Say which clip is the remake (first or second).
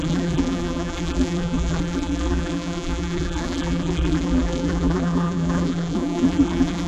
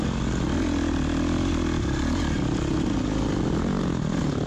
first